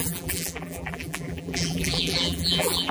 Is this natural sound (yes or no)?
no